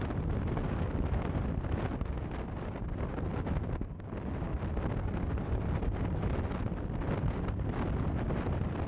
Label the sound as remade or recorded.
recorded